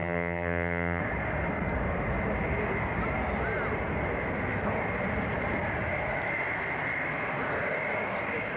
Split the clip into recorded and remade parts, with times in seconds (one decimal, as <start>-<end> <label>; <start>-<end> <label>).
0.0-1.0 remade; 1.0-8.6 recorded